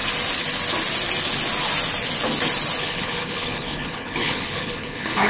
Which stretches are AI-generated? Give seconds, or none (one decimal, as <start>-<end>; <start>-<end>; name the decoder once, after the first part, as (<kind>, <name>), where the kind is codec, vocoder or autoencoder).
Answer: 2.8-5.3 (codec, HILCodec)